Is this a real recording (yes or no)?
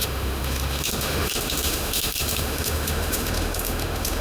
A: no